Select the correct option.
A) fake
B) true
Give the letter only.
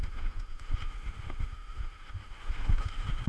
A